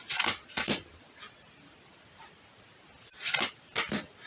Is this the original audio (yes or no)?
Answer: yes